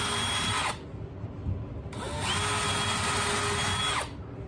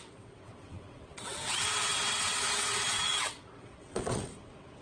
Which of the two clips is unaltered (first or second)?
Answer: first